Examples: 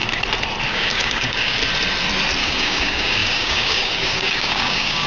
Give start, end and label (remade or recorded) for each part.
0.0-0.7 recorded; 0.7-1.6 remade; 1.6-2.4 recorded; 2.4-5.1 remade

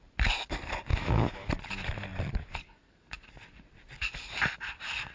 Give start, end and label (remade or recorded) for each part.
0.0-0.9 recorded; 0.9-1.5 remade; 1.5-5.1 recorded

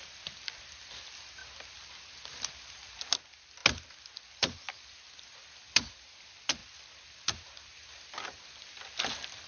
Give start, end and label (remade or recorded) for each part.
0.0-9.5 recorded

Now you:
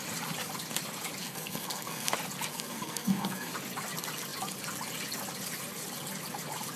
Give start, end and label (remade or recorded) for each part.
0.0-1.2 recorded; 1.2-2.1 remade; 2.1-2.5 recorded; 2.5-3.5 remade; 3.5-6.8 recorded

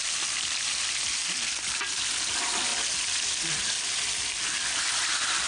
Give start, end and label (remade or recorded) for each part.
0.0-1.2 remade; 1.2-1.9 recorded; 1.9-5.5 remade